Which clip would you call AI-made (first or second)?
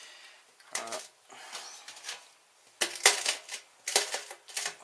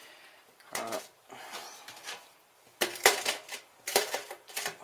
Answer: second